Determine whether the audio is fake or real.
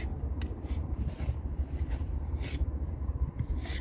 fake